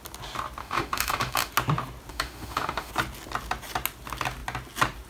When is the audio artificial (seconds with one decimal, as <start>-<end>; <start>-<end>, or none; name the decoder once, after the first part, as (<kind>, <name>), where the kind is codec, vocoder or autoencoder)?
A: 0.6-1.5 (autoencoder, DAC-VAE); 2.1-2.9